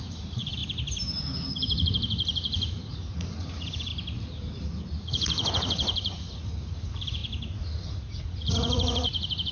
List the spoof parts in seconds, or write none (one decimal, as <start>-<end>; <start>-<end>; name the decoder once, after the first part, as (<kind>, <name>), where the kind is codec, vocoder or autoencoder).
0.0-0.6 (vocoder, Vocos); 1.5-3.9; 5.0-9.5